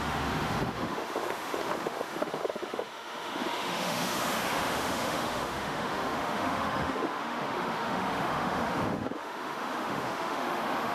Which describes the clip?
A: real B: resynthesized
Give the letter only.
B